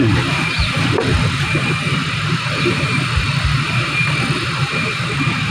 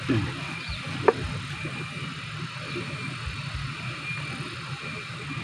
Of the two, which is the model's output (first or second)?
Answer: first